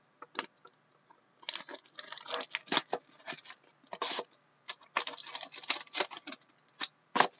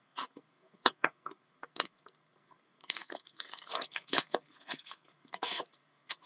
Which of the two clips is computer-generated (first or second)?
second